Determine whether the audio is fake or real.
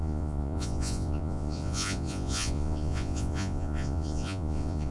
fake